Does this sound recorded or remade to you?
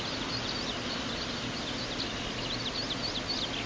recorded